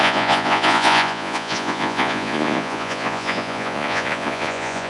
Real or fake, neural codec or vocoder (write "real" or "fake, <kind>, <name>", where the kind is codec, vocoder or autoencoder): fake, vocoder, Vocos